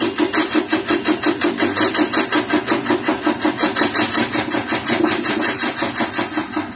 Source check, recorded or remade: recorded